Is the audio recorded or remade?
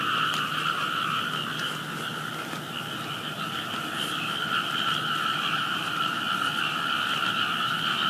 recorded